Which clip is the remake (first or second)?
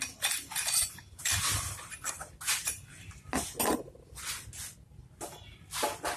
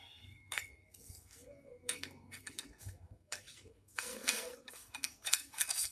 second